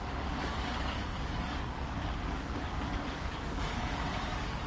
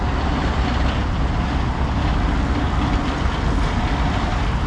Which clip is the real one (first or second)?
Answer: second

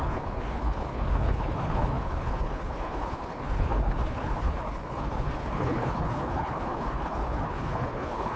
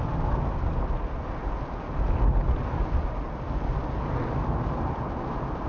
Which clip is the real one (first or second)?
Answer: second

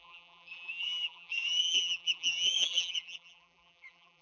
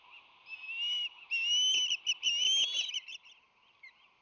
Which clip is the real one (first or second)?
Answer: second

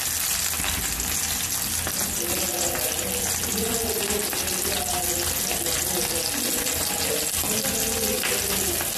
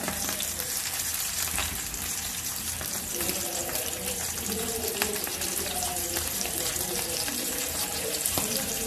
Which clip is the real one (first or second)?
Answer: first